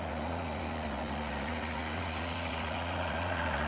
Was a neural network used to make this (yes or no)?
yes